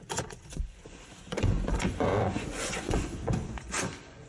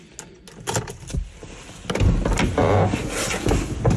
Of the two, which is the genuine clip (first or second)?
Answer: second